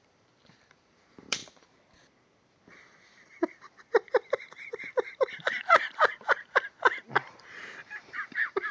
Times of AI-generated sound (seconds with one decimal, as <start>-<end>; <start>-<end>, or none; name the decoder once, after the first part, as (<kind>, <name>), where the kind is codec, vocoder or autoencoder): 0.0-1.4 (vocoder, BigVGAN v2); 3.9-8.7